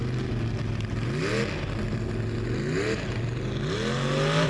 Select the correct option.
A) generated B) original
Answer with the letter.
B